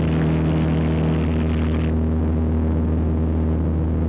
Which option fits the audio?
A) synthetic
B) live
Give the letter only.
B